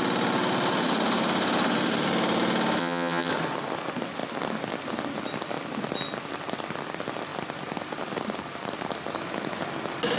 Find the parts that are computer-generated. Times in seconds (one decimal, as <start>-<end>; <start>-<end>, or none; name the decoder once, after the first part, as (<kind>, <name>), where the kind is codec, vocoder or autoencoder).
2.8-3.3 (vocoder, HiFi-GAN)